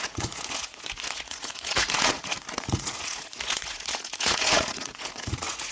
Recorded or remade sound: remade